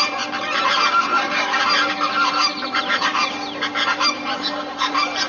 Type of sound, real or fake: fake